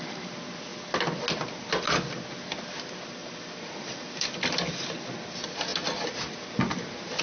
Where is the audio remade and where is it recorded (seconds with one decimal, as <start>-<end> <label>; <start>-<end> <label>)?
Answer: 0.0-3.2 recorded; 3.2-5.1 remade; 5.1-7.2 recorded